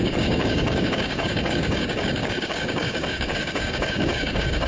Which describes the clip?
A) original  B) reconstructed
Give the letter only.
B